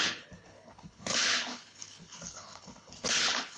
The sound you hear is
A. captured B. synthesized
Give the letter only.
B